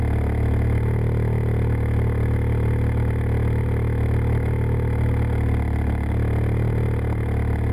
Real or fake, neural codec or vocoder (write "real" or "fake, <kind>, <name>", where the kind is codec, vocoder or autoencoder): real